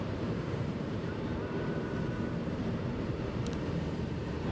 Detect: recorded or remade remade